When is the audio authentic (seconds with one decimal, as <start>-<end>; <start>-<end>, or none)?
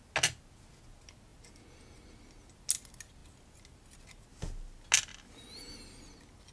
0.0-6.5